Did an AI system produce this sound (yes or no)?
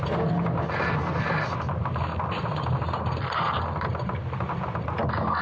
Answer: no